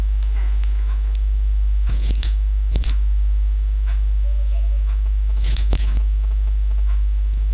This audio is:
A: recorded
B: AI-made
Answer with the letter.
B